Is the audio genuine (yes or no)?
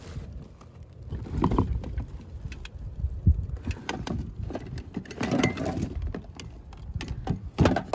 yes